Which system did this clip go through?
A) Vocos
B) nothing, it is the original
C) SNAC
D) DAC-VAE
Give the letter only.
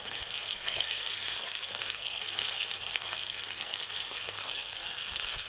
C